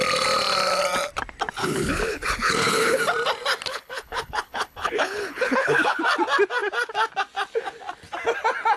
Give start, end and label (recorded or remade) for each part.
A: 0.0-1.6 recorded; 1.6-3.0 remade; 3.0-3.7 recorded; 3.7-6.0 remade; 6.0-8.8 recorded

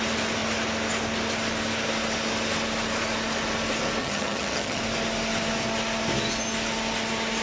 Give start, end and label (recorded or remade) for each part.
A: 0.0-4.0 recorded; 4.0-4.8 remade; 4.8-7.4 recorded